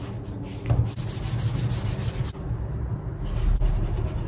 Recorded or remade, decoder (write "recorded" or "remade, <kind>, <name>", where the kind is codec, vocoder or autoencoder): recorded